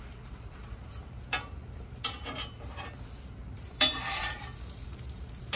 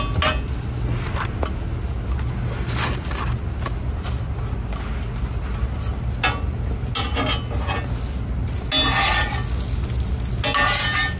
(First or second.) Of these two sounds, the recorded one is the second